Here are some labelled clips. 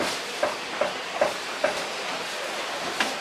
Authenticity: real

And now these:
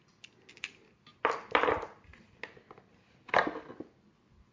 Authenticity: real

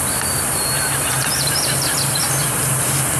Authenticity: fake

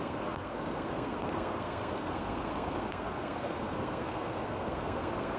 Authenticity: fake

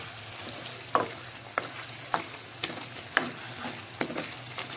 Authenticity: real